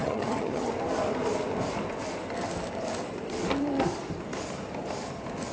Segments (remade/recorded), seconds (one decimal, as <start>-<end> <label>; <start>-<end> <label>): 0.0-0.7 remade; 0.7-5.5 recorded